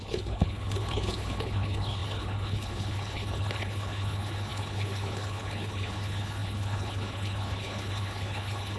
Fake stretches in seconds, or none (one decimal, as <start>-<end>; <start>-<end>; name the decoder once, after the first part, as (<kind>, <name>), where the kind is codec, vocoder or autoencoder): 0.0-8.8 (codec, HILCodec)